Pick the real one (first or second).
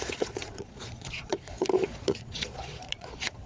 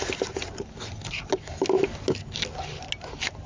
second